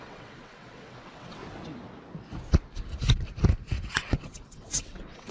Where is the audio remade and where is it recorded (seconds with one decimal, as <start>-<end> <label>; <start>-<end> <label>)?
0.0-1.4 remade; 1.4-3.9 recorded; 3.9-5.3 remade